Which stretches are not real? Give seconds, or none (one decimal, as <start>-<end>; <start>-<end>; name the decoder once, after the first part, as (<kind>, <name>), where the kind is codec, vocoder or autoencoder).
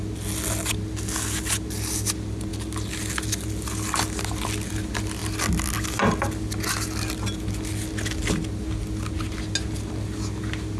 none